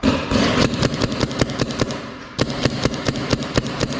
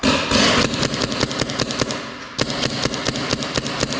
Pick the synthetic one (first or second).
first